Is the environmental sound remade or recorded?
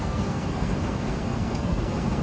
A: remade